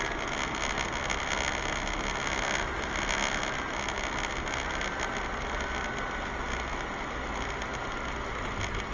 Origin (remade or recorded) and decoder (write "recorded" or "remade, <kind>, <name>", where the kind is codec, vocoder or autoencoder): recorded